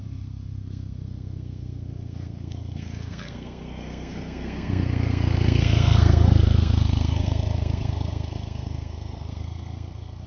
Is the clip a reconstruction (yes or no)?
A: yes